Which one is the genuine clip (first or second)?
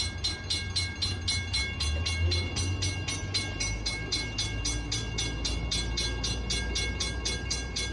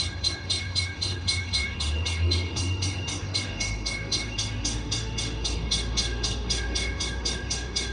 first